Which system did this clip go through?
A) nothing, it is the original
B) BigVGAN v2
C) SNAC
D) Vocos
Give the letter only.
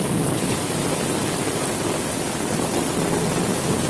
A